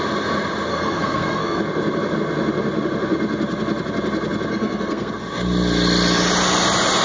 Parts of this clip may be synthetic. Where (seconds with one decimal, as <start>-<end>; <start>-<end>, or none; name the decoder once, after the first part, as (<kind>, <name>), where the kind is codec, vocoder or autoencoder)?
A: 0.7-1.6 (codec, SNAC); 4.5-5.1